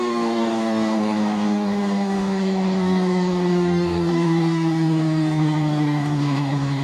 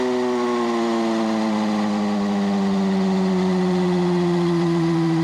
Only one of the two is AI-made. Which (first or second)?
first